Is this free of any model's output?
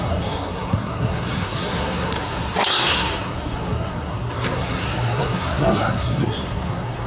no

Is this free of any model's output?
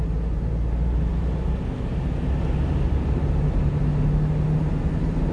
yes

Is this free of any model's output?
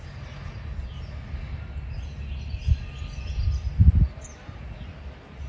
yes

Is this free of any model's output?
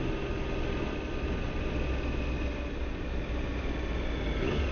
yes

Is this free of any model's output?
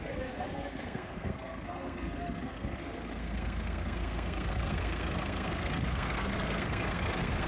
no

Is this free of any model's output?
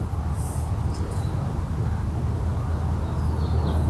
yes